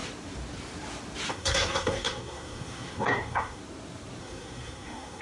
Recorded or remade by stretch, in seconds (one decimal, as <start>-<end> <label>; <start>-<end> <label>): 0.0-1.3 recorded; 1.3-3.6 remade; 3.6-4.2 recorded; 4.2-5.2 remade